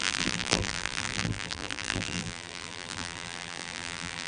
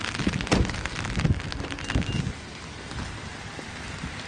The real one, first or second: second